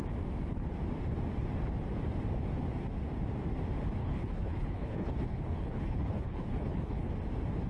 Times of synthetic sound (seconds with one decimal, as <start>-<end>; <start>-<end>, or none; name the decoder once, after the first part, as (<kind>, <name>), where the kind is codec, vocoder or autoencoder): 4.0-7.1 (codec, HILCodec)